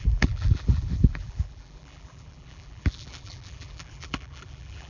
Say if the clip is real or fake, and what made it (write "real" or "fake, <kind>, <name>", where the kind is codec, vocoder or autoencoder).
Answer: fake, vocoder, BigVGAN v2